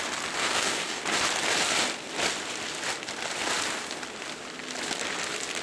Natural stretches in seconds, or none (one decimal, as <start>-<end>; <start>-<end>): 0.0-0.4; 1.0-5.6